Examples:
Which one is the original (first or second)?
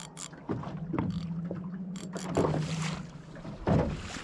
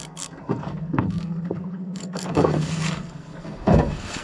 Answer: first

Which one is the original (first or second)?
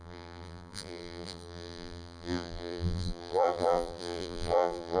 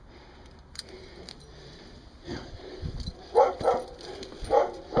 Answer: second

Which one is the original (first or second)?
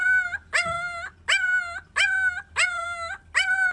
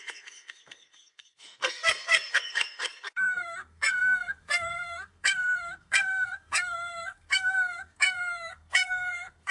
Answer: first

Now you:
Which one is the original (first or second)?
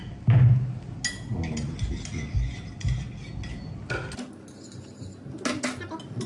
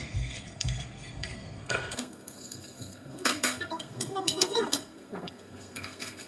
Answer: first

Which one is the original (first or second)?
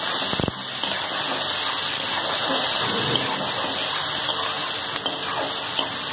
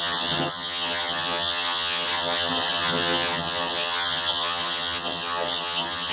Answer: first